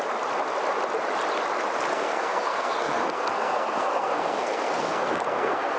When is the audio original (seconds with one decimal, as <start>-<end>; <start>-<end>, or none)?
0.0-1.9